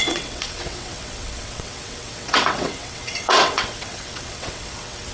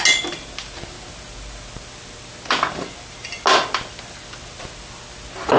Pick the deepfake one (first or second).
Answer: first